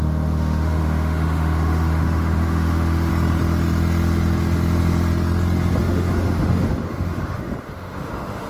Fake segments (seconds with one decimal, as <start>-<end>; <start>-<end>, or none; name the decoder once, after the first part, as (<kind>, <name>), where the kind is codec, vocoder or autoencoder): 0.0-3.1 (autoencoder, DAC-VAE); 5.8-8.5